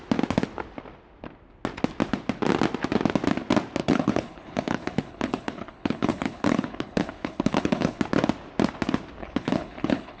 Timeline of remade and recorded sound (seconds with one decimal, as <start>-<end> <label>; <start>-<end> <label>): 0.0-3.8 recorded; 3.8-8.0 remade; 8.0-9.2 recorded; 9.2-10.2 remade